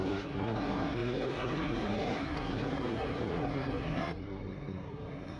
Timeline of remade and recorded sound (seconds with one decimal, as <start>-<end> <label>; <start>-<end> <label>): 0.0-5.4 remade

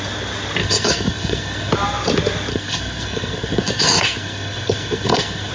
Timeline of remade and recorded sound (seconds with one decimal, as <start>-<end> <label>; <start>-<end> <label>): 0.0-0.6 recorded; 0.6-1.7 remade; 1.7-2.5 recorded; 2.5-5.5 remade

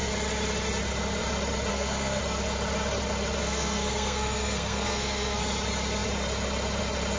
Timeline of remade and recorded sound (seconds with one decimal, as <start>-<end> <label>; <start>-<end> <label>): 0.0-1.7 recorded; 1.7-2.2 remade; 2.2-3.4 recorded; 3.4-5.4 remade; 5.4-7.2 recorded